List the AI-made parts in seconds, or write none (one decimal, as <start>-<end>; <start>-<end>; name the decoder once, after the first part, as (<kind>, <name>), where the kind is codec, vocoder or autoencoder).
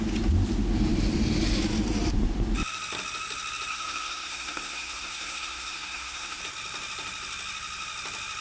3.7-6.4 (codec, SNAC)